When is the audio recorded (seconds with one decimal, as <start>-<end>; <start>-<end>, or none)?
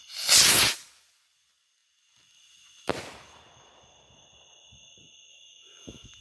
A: 0.0-5.3